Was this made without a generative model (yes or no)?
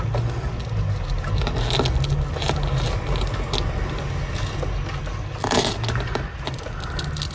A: yes